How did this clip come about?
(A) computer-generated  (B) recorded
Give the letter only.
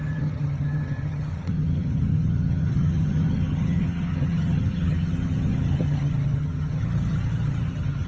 A